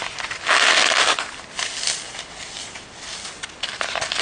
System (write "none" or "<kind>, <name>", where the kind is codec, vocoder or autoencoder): none